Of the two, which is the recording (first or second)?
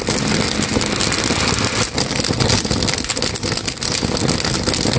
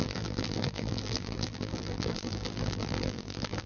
first